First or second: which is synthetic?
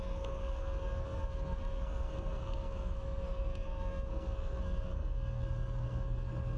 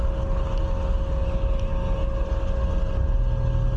first